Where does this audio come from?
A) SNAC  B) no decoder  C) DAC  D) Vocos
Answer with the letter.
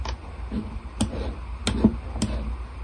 B